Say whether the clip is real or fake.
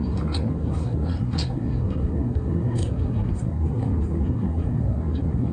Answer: fake